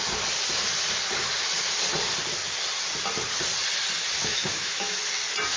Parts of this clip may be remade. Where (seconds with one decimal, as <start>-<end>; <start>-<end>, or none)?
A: 4.2-5.0

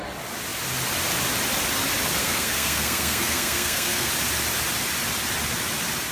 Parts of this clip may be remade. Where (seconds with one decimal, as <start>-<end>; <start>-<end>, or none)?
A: 2.2-4.1

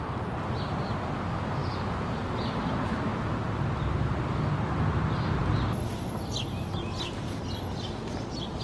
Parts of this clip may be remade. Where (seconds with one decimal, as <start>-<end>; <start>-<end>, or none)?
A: 1.6-2.6; 3.1-3.6

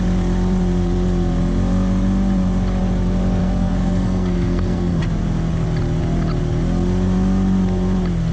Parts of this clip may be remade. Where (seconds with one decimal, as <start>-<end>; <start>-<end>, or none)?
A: 3.4-5.0

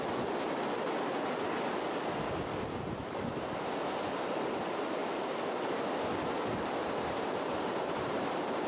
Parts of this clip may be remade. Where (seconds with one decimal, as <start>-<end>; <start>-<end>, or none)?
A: none

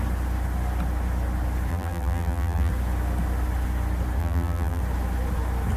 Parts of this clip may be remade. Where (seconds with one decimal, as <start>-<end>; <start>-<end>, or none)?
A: 1.7-2.7; 4.2-4.8

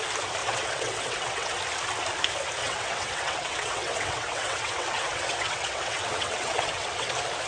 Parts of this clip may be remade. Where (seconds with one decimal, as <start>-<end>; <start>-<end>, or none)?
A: 0.4-1.5; 2.6-7.1